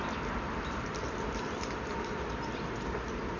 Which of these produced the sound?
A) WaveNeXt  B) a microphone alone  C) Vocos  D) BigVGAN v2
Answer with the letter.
B